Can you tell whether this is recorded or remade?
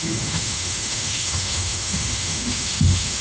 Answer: remade